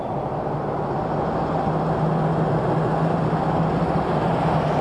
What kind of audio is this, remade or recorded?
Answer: recorded